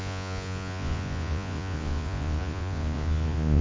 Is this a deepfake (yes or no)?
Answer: yes